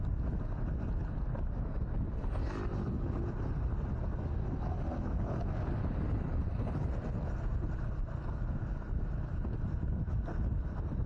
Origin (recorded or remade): recorded